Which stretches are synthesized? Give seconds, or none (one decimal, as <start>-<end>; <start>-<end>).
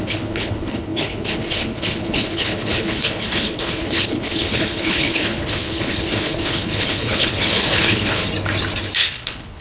0.0-8.2; 9.0-9.6